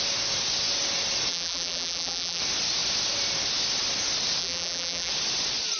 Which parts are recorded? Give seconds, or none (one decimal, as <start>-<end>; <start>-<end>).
0.0-1.3; 2.4-4.4; 5.1-5.8